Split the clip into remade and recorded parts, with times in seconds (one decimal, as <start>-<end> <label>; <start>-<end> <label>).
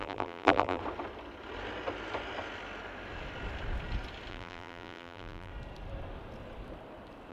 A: 0.0-0.8 remade; 0.8-4.3 recorded; 4.3-5.5 remade; 5.5-7.3 recorded